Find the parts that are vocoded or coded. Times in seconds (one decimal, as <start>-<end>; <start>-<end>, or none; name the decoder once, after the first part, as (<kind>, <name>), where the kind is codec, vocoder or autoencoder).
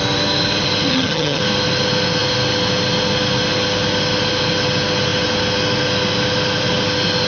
0.9-1.4 (vocoder, HiFi-GAN)